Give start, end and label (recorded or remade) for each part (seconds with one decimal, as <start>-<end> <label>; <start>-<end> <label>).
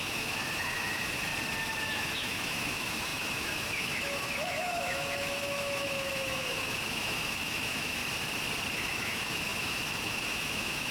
0.0-1.3 remade; 1.3-1.9 recorded; 1.9-8.0 remade; 8.0-8.7 recorded; 8.7-10.9 remade